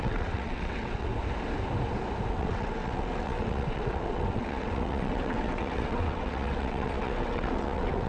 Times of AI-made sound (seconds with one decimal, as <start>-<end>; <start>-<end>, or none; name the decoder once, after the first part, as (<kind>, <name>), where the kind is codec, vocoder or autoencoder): 0.0-1.1 (vocoder, WaveNeXt); 2.3-8.1